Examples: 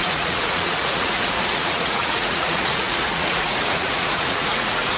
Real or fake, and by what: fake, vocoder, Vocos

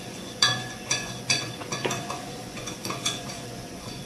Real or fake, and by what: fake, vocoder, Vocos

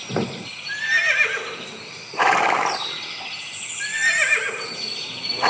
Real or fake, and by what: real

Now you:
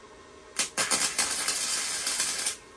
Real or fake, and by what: real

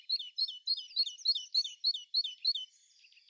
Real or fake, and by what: real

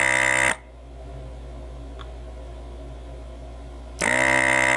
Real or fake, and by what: real